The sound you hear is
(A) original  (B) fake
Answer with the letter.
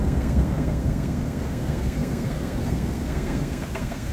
B